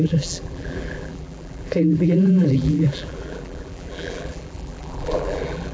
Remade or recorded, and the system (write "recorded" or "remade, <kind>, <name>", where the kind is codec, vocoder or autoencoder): remade, vocoder, BigVGAN v2